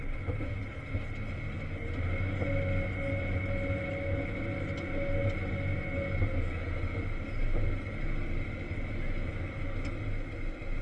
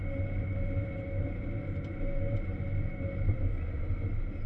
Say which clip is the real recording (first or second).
first